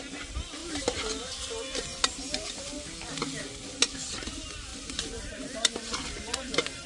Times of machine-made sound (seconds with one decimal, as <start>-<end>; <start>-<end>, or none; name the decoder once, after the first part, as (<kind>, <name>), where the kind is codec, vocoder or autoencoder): 4.7-5.3 (vocoder, BigVGAN v2)